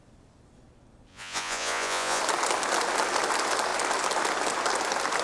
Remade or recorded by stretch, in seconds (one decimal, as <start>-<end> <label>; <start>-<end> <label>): 0.0-1.1 recorded; 1.1-2.2 remade; 2.2-5.2 recorded